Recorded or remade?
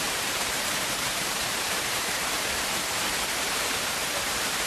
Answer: remade